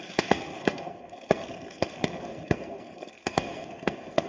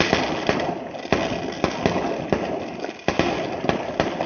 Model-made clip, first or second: first